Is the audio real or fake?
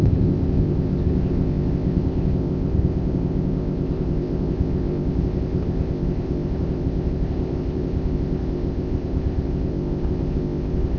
fake